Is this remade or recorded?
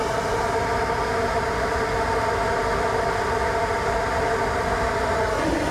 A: recorded